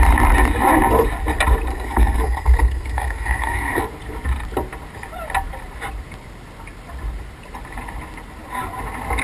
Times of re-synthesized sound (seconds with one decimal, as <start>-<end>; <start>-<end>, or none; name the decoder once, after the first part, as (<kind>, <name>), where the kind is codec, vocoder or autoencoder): 1.7-3.8 (codec, SNAC)